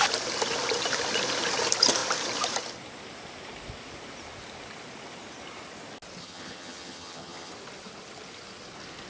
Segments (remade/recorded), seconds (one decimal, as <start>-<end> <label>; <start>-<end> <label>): 0.0-6.2 recorded; 6.2-7.5 remade; 7.5-9.1 recorded